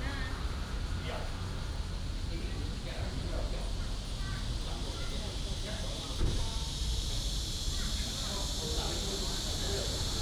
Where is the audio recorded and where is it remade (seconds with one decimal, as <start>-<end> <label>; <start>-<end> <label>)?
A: 0.0-1.7 recorded; 1.7-2.6 remade; 2.6-4.8 recorded; 4.8-8.0 remade; 8.0-10.2 recorded